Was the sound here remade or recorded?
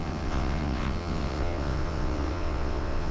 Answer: remade